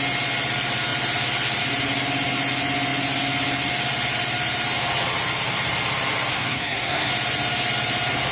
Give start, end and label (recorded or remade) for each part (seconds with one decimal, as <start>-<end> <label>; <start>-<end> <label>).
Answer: 0.0-6.3 recorded; 6.3-7.1 remade; 7.1-8.3 recorded